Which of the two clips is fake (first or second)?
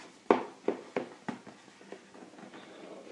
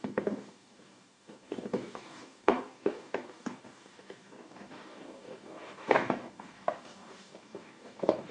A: second